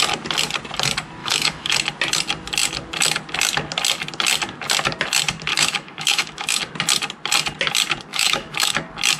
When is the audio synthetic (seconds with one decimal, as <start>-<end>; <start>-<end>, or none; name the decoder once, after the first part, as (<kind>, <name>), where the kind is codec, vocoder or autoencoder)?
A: 1.2-1.7 (autoencoder, DAC-VAE); 5.5-6.6; 8.1-8.7